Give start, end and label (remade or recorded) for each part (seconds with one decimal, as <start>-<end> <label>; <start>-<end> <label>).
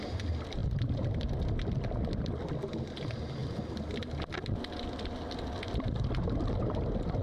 0.0-0.6 recorded; 0.6-2.4 remade; 2.4-7.2 recorded